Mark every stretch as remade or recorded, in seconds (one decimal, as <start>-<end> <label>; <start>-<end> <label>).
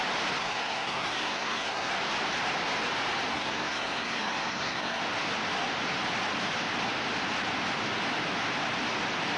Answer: 0.0-0.4 recorded; 0.4-1.9 remade; 1.9-3.3 recorded; 3.3-5.0 remade; 5.0-9.4 recorded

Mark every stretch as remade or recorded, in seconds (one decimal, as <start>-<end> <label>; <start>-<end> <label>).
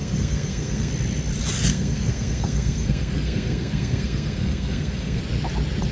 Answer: 0.0-0.9 remade; 0.9-1.7 recorded; 1.7-5.2 remade; 5.2-5.9 recorded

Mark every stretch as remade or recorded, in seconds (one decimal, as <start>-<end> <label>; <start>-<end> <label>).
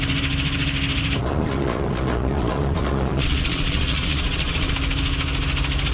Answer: 0.0-1.2 recorded; 1.2-4.7 remade; 4.7-5.9 recorded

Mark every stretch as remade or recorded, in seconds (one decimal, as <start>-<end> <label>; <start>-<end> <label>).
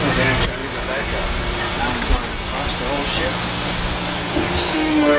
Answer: 0.0-4.7 recorded; 4.7-5.2 remade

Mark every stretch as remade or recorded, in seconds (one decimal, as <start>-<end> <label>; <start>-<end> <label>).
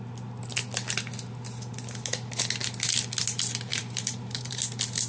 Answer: 0.0-3.7 recorded; 3.7-4.6 remade; 4.6-5.1 recorded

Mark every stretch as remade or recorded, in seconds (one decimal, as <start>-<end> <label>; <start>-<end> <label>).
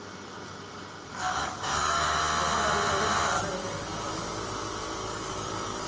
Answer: 0.0-1.1 recorded; 1.1-2.2 remade; 2.2-3.6 recorded; 3.6-4.2 remade; 4.2-5.0 recorded; 5.0-5.9 remade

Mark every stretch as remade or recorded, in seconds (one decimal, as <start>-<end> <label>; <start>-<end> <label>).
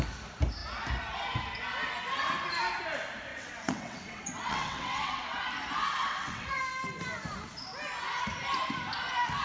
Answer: 0.0-3.3 recorded; 3.3-5.4 remade; 5.4-6.0 recorded; 6.0-6.6 remade; 6.6-9.4 recorded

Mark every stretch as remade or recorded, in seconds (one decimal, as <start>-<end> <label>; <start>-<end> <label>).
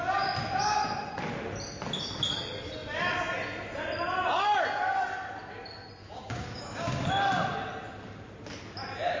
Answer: 0.0-6.0 recorded; 6.0-7.1 remade; 7.1-9.2 recorded